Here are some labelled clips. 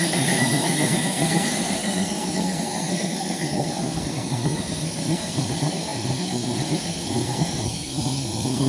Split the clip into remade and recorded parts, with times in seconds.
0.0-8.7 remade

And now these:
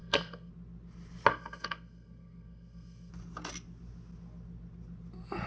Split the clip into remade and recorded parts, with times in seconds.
0.0-0.5 remade; 0.5-1.3 recorded; 1.3-3.1 remade; 3.1-5.5 recorded

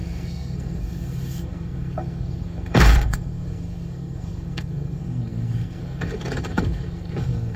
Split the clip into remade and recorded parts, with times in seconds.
0.0-7.6 remade

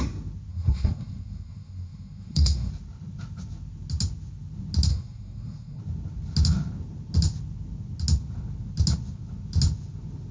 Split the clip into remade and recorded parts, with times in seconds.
0.0-0.5 recorded; 0.5-2.7 remade; 2.7-4.9 recorded; 4.9-5.8 remade; 5.8-10.3 recorded

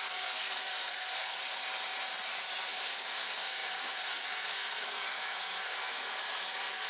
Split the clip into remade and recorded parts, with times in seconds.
0.0-1.4 remade; 1.4-2.7 recorded; 2.7-6.9 remade

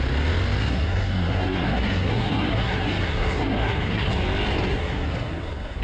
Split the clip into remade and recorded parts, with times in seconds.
0.0-0.6 recorded; 0.6-4.1 remade; 4.1-4.7 recorded; 4.7-5.8 remade